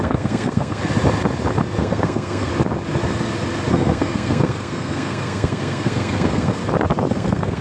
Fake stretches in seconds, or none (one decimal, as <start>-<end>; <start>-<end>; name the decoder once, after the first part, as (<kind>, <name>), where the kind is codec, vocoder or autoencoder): 0.0-0.8 (codec, SNAC); 1.8-2.5; 3.7-6.6; 7.1-7.6